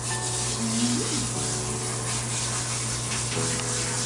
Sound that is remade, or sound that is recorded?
recorded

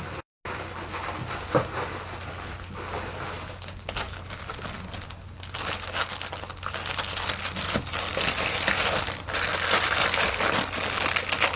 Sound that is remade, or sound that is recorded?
recorded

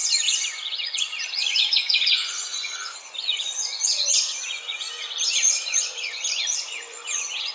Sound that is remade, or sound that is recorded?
remade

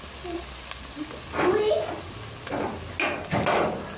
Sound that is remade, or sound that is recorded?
recorded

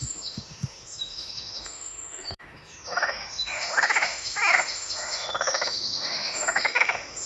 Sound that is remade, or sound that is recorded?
remade